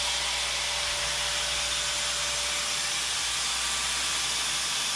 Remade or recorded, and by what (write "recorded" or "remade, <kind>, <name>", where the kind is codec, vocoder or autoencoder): recorded